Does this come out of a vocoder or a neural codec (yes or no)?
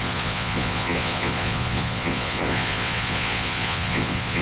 yes